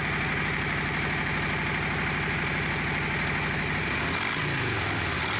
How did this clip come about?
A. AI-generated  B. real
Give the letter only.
B